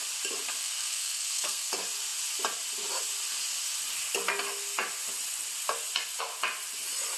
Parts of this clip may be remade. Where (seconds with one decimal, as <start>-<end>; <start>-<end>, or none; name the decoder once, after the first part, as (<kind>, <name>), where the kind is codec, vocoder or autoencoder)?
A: 0.6-1.7 (codec, SNAC)